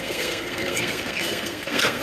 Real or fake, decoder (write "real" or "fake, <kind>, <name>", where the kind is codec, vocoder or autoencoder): fake, codec, SNAC